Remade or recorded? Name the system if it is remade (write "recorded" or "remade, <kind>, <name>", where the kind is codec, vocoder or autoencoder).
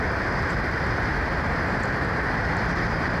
recorded